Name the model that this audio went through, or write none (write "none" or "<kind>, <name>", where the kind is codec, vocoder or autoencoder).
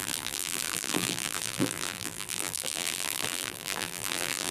vocoder, BigVGAN v2